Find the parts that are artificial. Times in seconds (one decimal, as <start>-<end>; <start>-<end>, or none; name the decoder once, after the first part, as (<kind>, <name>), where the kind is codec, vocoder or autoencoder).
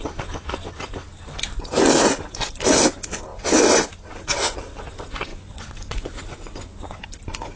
5.3-7.1 (vocoder, Vocos)